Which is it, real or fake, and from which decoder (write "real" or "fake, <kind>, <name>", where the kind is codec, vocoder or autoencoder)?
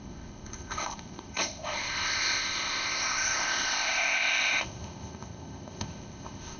fake, codec, ZipCodec